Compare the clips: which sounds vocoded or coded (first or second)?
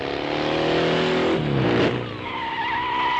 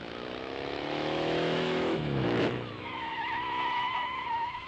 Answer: second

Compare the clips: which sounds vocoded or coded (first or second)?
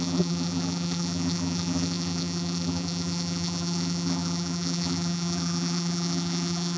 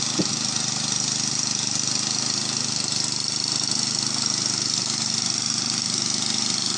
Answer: first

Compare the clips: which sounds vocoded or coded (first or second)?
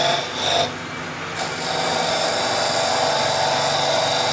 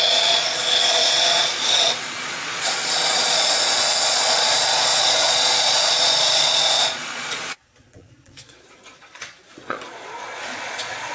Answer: second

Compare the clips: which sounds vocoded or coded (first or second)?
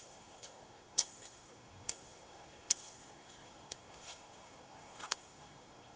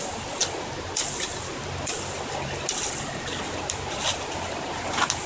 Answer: first